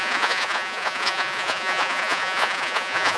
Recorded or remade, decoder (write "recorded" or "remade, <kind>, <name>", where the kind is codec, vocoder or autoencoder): remade, vocoder, Vocos